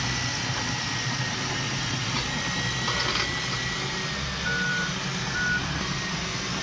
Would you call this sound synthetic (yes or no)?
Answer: no